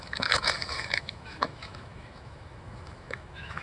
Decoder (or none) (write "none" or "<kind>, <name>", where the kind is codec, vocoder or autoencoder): autoencoder, DAC-VAE